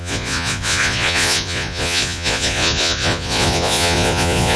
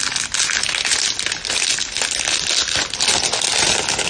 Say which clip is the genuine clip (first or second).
second